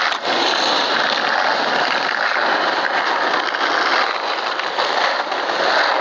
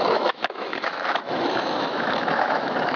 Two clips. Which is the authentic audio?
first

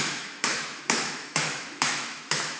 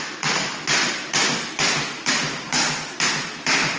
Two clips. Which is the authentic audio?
second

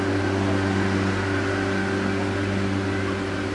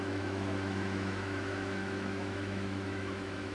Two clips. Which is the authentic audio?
first